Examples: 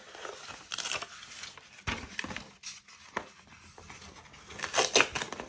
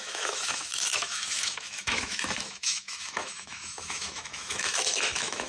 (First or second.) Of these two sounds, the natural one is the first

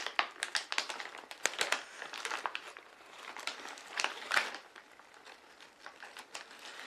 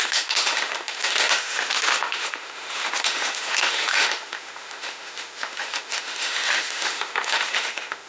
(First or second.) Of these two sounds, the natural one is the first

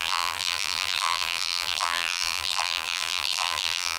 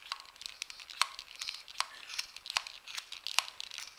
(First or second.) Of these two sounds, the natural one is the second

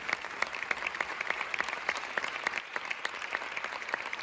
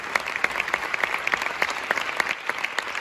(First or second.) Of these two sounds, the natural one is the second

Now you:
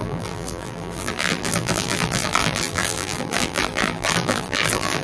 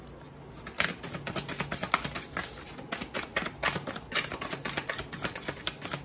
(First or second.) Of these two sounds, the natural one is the second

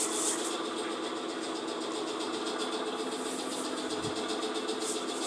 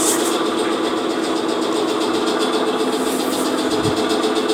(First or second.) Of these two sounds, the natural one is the second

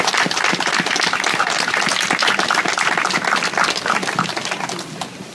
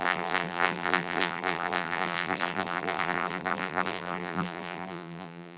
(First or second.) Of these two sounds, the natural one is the first